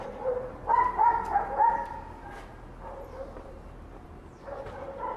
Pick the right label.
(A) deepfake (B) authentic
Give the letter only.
B